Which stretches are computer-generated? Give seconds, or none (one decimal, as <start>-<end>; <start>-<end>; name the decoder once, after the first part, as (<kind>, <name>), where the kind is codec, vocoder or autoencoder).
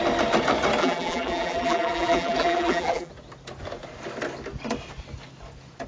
0.8-3.1 (vocoder, BigVGAN v2)